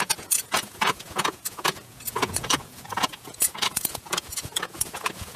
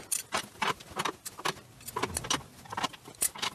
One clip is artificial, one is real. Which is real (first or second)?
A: second